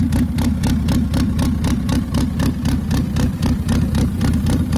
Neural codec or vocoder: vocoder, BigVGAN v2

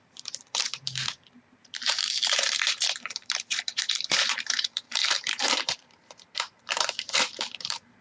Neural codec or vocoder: vocoder, BigVGAN v2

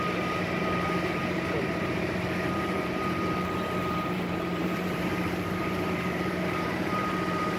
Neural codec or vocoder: vocoder, BigVGAN v2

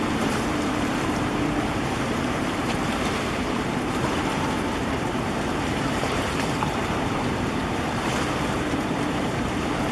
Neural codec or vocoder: vocoder, BigVGAN v2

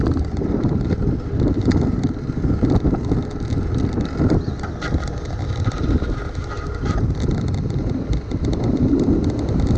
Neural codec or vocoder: none